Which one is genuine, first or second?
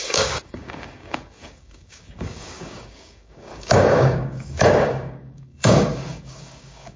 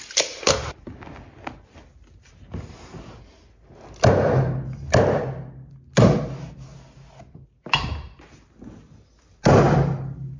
second